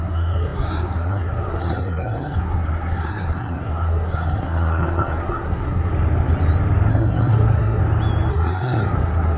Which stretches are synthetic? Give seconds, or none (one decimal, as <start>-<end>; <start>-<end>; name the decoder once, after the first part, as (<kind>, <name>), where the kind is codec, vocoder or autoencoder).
0.0-5.9 (codec, SNAC); 6.9-7.8; 8.3-9.4